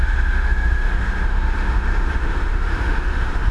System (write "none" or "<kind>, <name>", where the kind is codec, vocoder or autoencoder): autoencoder, DAC-VAE